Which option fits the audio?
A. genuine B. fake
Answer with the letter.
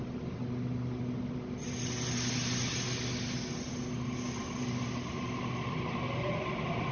A